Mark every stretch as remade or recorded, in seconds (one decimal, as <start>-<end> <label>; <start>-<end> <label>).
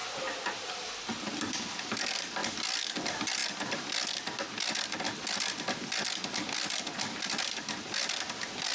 0.0-8.7 recorded